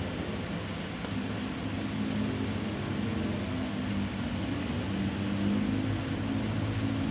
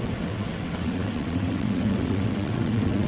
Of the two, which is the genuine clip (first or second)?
first